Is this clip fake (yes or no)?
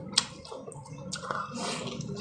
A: no